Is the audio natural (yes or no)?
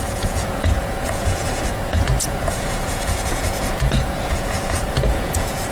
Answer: no